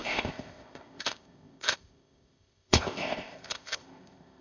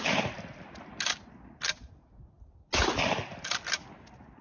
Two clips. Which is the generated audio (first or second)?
first